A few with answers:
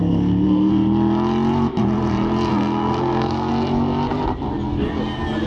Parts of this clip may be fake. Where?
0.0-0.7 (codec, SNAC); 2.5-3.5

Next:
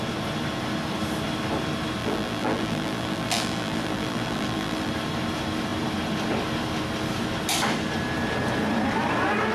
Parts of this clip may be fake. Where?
2.0-4.9 (vocoder, BigVGAN v2)